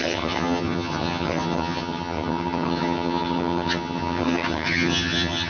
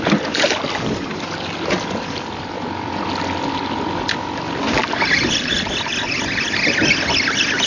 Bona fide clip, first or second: second